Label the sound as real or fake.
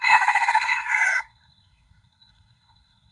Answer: fake